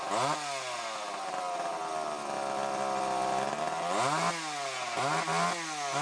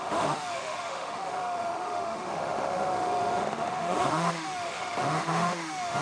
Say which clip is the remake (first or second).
second